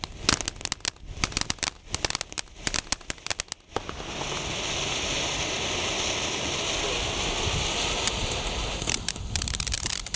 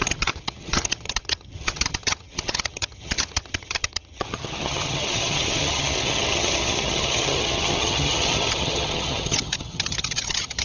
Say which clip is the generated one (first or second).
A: second